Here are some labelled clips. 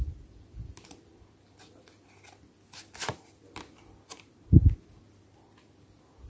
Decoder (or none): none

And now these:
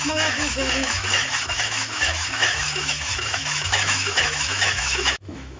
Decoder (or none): autoencoder, DAC-VAE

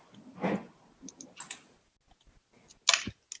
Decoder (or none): none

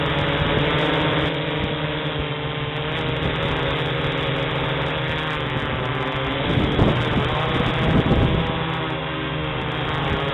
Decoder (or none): none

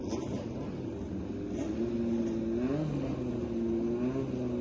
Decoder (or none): none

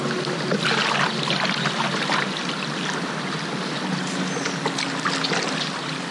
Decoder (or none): none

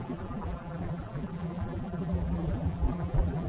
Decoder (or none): vocoder, BigVGAN v2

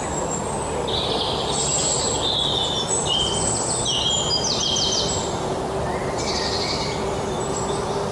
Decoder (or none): none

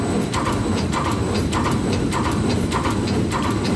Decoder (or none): none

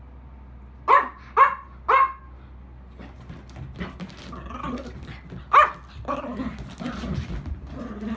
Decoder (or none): none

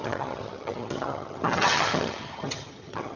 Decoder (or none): vocoder, HiFi-GAN